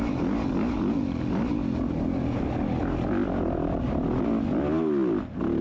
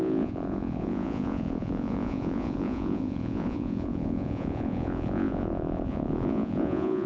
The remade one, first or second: second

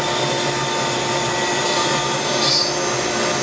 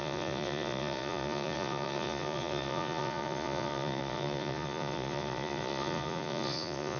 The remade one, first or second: second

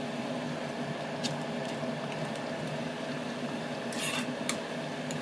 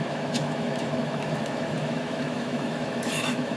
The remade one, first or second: second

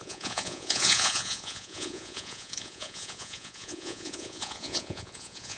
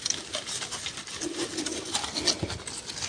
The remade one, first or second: first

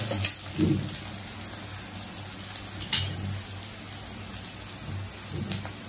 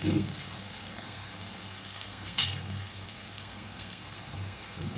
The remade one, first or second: second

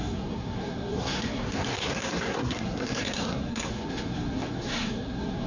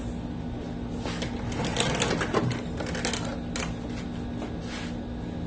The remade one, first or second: first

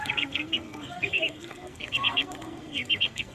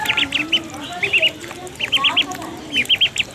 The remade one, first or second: first